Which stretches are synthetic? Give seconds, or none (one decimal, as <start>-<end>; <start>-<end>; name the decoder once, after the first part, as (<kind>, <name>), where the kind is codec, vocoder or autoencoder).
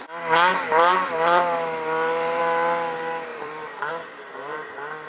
0.5-2.4 (vocoder, BigVGAN v2); 3.3-3.9